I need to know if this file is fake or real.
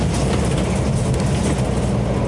real